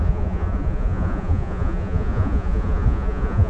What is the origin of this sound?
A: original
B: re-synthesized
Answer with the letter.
B